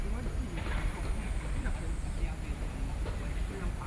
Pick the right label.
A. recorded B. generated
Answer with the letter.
A